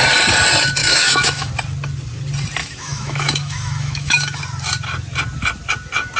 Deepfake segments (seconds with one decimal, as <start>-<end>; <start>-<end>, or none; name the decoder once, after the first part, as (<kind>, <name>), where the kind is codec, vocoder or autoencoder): 0.8-1.5 (autoencoder, DAC-VAE); 2.6-4.4